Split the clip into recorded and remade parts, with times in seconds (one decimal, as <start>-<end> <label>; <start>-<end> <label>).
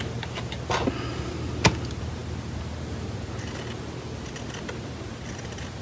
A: 0.0-5.8 recorded